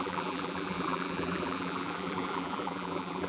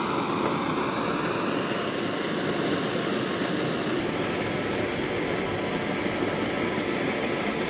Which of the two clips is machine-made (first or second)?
first